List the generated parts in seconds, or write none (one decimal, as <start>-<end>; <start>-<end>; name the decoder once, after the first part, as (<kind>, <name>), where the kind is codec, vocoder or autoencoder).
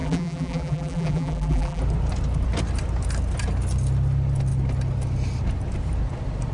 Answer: 0.0-1.8 (vocoder, BigVGAN v2)